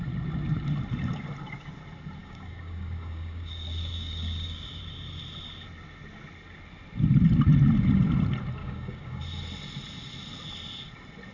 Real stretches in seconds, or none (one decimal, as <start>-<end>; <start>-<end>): 0.0-2.2; 4.8-8.6; 9.2-11.3